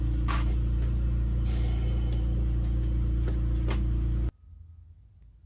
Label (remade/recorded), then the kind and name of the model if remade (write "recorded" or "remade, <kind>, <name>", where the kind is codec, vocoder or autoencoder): recorded